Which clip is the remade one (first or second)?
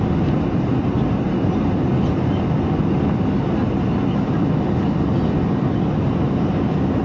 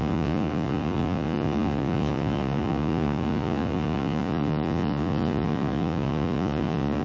second